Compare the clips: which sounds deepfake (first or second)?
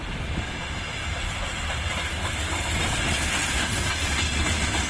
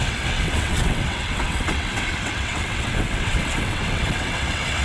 second